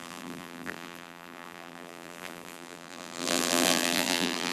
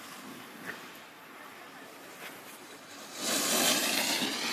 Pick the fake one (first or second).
first